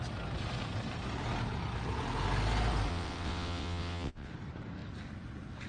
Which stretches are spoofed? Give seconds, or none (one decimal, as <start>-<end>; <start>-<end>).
2.9-4.3